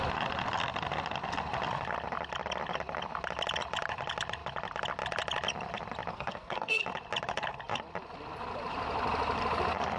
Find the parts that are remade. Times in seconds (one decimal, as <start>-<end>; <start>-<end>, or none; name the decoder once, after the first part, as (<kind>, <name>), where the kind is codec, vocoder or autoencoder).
6.1-6.8 (codec, SNAC)